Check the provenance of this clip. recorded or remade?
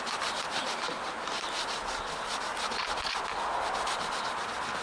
recorded